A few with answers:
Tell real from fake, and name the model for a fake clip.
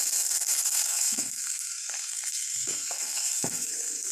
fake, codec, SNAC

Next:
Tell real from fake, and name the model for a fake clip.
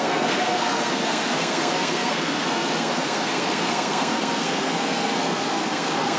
fake, codec, SNAC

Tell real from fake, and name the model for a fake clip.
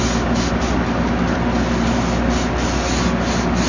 real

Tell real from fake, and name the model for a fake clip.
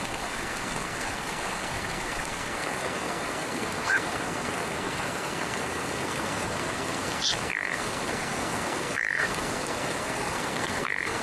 fake, codec, SNAC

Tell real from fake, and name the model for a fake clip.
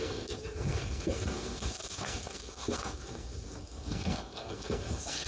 fake, codec, SNAC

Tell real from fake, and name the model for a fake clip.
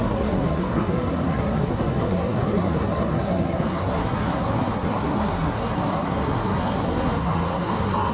fake, codec, SNAC